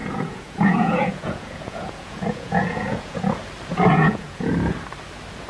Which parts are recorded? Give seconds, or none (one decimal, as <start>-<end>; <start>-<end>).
3.3-3.7; 4.5-5.5